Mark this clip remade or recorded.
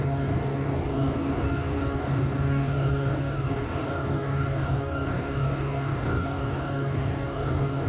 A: remade